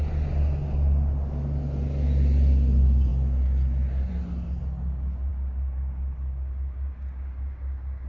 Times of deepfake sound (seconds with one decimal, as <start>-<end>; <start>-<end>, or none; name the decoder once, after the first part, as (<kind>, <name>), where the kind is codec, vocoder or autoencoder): none